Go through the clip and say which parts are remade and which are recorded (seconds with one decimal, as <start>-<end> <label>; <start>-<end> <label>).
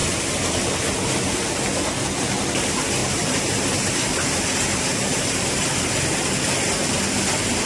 0.0-3.0 recorded; 3.0-4.1 remade; 4.1-5.1 recorded; 5.1-5.6 remade; 5.6-7.7 recorded